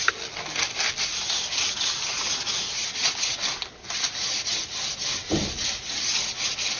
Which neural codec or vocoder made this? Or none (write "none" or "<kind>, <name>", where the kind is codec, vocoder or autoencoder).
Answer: none